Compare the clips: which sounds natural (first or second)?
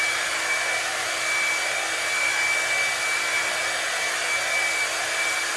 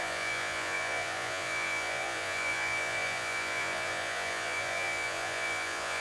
first